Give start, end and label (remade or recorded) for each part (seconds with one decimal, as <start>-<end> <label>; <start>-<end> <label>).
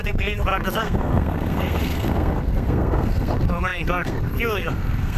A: 0.0-5.2 remade